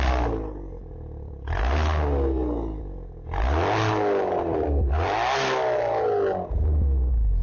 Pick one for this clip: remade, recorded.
recorded